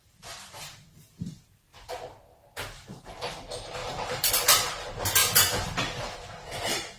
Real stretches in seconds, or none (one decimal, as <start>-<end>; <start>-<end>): 1.7-2.8; 5.2-6.0